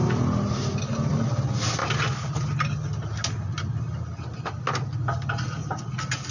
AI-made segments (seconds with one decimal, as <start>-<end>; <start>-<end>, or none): none